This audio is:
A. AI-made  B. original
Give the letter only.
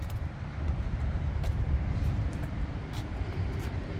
A